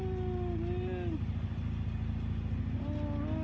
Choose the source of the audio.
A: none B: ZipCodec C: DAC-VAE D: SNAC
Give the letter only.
A